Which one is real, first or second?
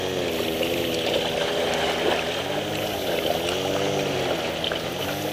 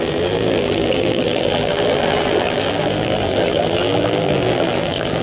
first